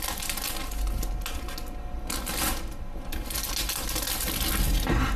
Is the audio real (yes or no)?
yes